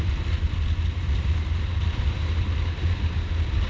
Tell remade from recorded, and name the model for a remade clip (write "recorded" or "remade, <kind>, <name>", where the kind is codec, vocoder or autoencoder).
recorded